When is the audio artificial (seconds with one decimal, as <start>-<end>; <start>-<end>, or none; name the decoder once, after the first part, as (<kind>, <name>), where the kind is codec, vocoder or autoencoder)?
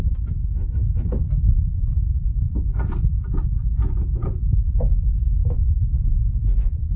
none